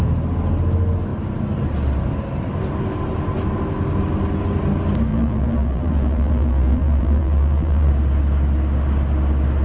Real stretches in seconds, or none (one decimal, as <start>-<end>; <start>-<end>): 0.0-5.1; 7.9-9.6